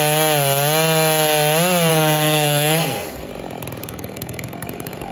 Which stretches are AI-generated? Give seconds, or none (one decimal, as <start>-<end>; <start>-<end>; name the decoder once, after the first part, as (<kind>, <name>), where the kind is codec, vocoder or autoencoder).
1.9-3.3 (codec, SNAC); 3.8-5.1

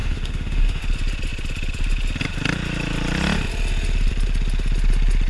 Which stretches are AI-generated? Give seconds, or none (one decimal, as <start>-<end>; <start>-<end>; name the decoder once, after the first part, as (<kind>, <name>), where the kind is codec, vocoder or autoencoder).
0.0-0.8 (autoencoder, DAC-VAE)

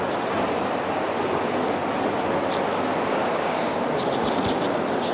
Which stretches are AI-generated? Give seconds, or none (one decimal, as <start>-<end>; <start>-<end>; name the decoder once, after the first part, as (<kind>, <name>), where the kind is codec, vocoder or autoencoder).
3.2-3.8 (codec, DAC)

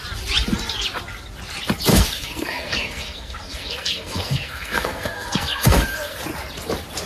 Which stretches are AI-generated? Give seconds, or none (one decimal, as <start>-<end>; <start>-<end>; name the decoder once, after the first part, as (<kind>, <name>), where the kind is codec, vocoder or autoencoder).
1.9-6.2 (codec, SNAC)